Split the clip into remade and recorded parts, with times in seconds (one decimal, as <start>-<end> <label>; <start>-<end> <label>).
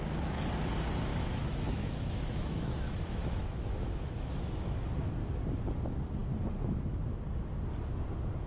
0.0-1.1 recorded; 1.1-4.9 remade; 4.9-8.5 recorded